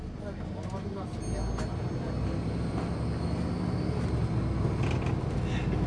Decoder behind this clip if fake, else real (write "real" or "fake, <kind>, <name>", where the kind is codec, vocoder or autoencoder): real